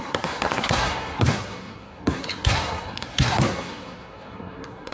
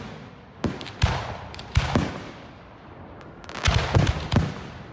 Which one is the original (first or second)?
second